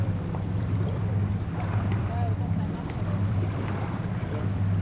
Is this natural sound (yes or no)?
no